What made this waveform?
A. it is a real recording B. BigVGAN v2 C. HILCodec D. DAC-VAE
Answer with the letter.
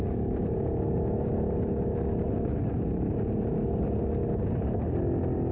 A